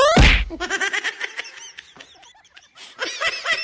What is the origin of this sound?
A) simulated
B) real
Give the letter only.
B